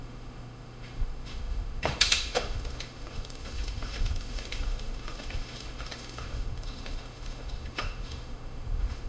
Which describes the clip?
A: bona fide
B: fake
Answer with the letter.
B